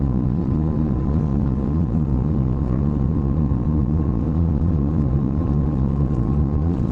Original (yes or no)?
no